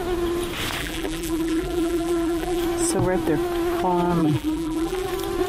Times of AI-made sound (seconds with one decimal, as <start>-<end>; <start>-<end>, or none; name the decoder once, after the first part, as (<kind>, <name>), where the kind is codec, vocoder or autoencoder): 0.8-2.6 (vocoder, BigVGAN v2); 4.2-5.1